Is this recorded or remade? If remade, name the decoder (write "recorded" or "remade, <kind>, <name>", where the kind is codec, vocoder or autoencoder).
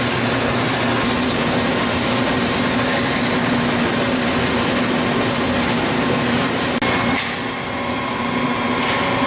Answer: recorded